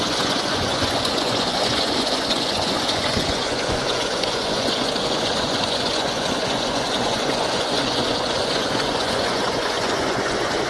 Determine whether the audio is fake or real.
fake